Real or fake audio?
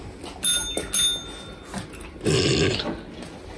real